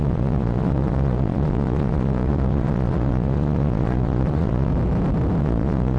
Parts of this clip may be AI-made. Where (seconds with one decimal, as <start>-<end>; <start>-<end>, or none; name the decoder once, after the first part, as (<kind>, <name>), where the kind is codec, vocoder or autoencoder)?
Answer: 0.0-4.7 (vocoder, Vocos); 5.4-6.0